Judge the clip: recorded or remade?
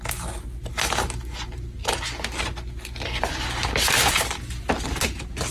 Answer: recorded